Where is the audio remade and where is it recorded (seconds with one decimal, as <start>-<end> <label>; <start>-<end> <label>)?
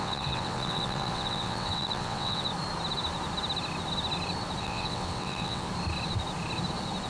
0.0-2.5 remade; 2.5-4.6 recorded; 4.6-5.7 remade; 5.7-7.1 recorded